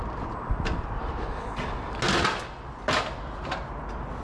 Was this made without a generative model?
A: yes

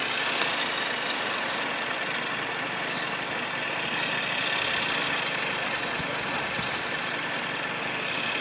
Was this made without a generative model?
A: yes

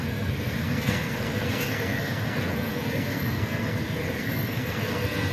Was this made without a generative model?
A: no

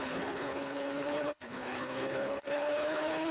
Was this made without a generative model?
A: no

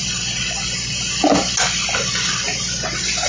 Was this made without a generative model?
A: yes